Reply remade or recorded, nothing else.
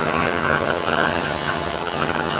remade